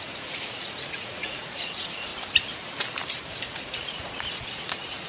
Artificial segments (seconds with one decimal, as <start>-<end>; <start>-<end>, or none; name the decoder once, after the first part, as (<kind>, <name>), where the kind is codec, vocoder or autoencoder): 0.0-2.1 (vocoder, Vocos); 3.5-5.1